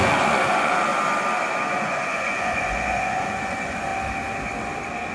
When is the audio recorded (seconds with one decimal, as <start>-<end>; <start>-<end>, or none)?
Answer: 0.9-1.7; 3.9-5.1